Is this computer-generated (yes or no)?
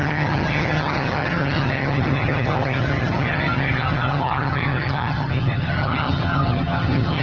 yes